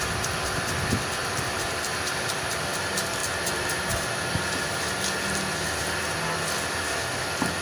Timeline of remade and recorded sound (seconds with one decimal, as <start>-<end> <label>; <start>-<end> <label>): 0.0-1.2 recorded; 1.2-2.3 remade; 2.3-7.6 recorded